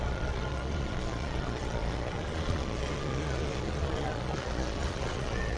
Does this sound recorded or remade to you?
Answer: remade